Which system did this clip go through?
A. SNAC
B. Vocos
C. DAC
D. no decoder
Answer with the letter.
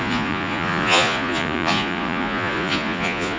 B